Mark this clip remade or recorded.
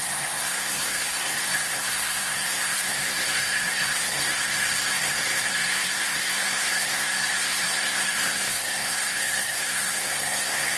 remade